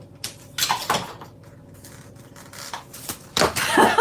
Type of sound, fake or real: real